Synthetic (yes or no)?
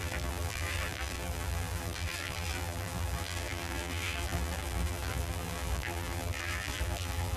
yes